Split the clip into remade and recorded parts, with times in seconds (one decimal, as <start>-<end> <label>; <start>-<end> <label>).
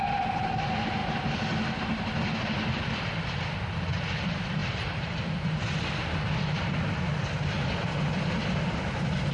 0.0-4.6 recorded; 4.6-5.2 remade; 5.2-9.3 recorded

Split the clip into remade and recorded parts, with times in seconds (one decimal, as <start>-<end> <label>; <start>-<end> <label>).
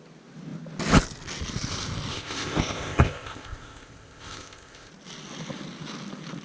0.0-2.1 recorded; 2.1-4.9 remade; 4.9-6.4 recorded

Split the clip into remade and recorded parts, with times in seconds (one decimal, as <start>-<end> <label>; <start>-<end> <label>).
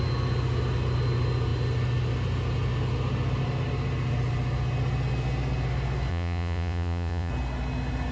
0.0-6.1 recorded; 6.1-7.3 remade; 7.3-8.1 recorded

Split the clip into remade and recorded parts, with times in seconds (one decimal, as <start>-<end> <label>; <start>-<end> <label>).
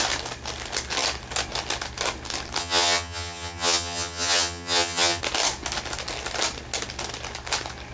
0.0-2.6 recorded; 2.6-5.2 remade; 5.2-7.9 recorded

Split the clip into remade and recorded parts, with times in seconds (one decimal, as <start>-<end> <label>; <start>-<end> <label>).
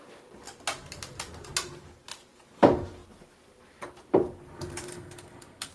0.0-4.9 recorded; 4.9-5.7 remade